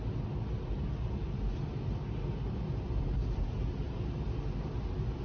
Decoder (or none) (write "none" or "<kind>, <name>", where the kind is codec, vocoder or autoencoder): none